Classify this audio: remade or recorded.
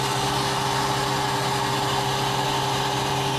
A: recorded